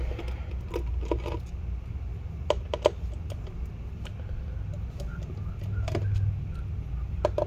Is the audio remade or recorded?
recorded